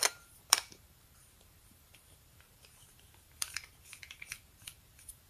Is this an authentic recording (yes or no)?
no